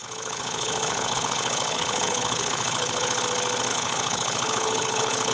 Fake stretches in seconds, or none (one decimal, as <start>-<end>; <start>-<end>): 0.0-3.2; 3.7-5.3